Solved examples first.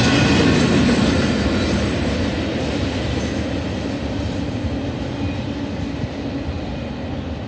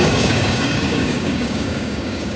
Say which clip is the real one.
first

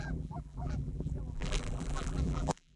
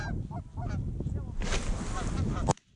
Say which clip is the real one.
second